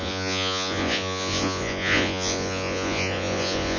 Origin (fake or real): fake